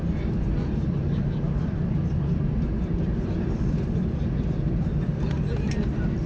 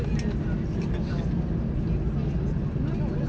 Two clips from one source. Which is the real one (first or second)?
second